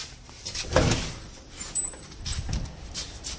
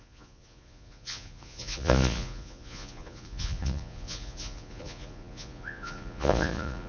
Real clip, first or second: first